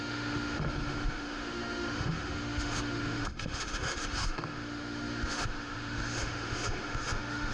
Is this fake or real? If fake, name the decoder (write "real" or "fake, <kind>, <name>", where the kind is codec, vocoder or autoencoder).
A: fake, autoencoder, DAC-VAE